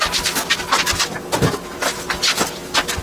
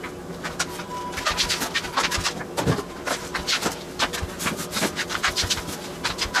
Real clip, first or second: first